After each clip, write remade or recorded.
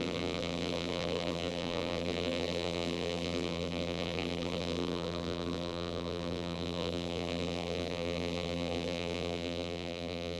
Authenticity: remade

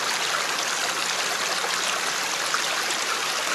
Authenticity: recorded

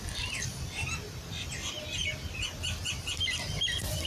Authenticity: recorded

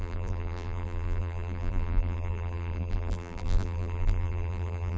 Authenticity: remade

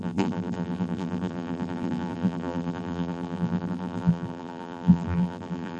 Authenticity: remade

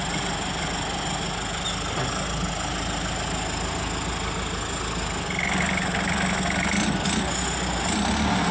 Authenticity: recorded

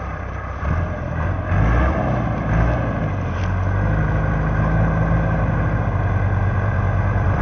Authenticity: remade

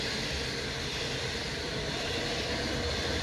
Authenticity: recorded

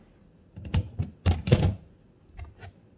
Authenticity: recorded